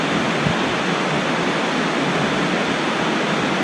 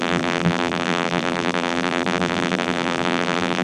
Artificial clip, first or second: second